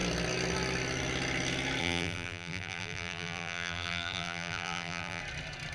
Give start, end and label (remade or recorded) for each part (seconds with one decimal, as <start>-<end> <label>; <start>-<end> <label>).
0.0-1.8 recorded; 1.8-5.2 remade; 5.2-5.7 recorded